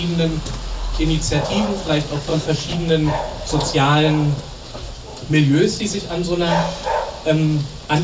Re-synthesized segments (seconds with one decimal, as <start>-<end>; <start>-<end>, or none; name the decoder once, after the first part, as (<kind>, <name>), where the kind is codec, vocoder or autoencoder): 2.3-3.2 (autoencoder, DAC-VAE)